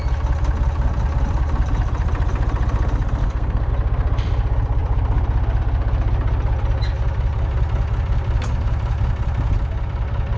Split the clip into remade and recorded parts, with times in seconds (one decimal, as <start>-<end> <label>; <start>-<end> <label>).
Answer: 0.0-3.2 recorded; 3.2-3.7 remade; 3.7-10.4 recorded